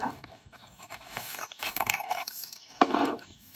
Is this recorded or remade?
remade